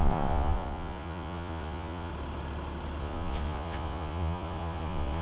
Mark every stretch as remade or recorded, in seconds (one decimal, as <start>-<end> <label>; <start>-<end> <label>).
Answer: 0.0-2.1 remade; 2.1-3.0 recorded; 3.0-5.2 remade